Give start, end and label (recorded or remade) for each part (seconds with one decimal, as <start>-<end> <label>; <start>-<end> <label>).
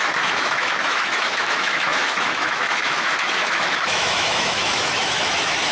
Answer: 0.0-5.7 remade